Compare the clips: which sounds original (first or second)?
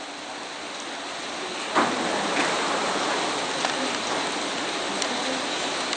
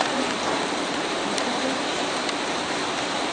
first